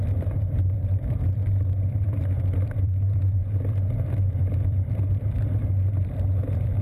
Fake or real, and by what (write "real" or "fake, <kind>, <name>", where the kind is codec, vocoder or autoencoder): fake, vocoder, BigVGAN v2